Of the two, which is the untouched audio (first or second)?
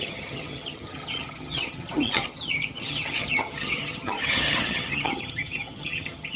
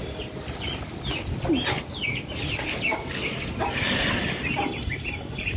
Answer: second